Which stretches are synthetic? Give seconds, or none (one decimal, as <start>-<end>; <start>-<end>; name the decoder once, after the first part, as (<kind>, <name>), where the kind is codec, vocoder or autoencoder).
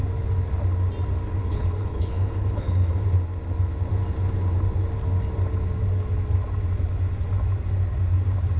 1.4-2.9 (codec, HILCodec)